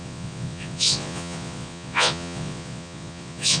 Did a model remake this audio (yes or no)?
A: yes